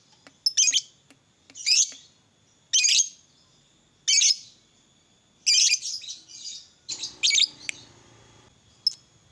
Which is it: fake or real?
real